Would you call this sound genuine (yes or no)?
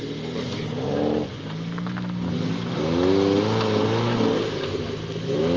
yes